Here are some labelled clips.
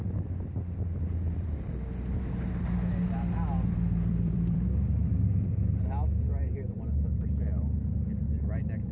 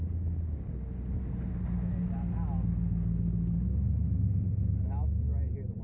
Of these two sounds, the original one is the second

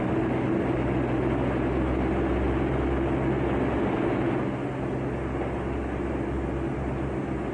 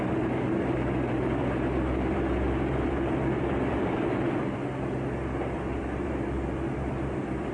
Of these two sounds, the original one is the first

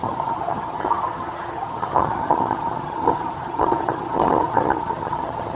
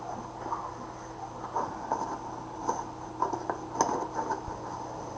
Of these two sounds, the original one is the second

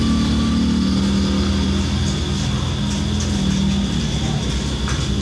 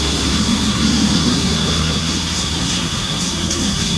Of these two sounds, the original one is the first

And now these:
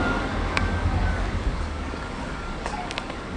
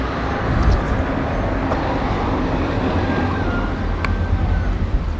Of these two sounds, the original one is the second